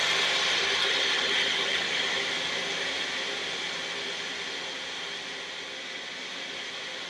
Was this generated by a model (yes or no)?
no